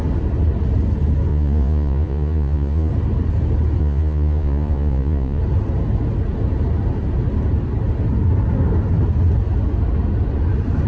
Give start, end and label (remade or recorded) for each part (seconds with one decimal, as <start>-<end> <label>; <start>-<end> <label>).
0.0-1.3 recorded; 1.3-2.9 remade; 2.9-3.8 recorded; 3.8-5.4 remade; 5.4-10.9 recorded